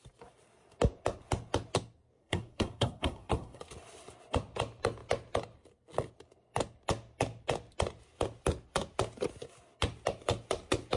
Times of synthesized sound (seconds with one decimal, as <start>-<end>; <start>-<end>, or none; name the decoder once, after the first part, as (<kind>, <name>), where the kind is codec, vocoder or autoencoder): 2.2-3.6 (codec, SNAC)